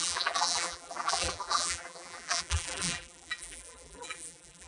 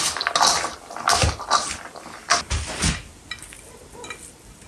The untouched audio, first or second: second